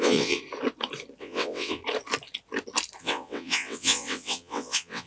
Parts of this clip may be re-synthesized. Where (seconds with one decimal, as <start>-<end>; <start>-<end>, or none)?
0.0-0.4; 1.2-1.8; 3.0-5.1